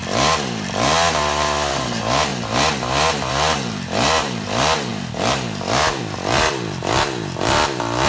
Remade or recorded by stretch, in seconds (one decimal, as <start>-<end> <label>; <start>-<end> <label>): 0.0-8.1 recorded